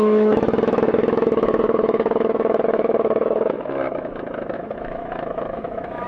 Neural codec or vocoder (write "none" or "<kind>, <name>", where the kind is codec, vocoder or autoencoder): autoencoder, DAC-VAE